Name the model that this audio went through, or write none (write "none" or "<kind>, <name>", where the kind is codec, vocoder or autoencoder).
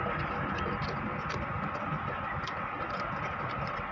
none